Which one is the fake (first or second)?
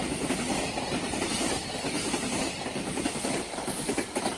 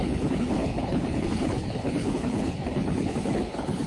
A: second